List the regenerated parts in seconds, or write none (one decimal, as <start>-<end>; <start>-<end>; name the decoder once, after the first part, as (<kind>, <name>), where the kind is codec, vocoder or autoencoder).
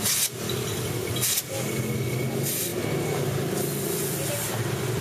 none